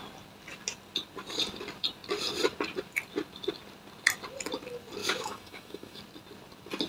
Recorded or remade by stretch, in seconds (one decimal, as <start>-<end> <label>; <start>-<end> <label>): 0.0-5.0 recorded; 5.0-6.0 remade; 6.0-6.9 recorded